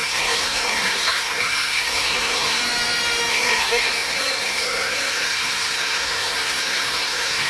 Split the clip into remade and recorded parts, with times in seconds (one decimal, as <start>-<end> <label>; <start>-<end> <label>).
0.0-2.6 remade; 2.6-3.3 recorded; 3.3-7.5 remade